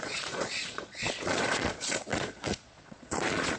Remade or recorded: remade